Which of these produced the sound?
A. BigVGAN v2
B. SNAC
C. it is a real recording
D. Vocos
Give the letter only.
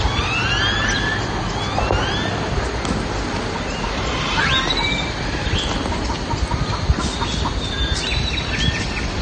C